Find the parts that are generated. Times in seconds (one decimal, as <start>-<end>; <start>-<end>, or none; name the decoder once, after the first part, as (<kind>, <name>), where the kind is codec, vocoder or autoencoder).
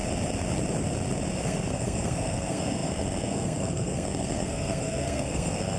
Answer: 1.4-5.8 (codec, SNAC)